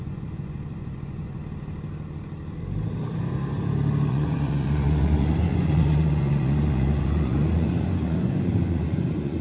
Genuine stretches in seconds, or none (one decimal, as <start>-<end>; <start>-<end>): 1.4-4.1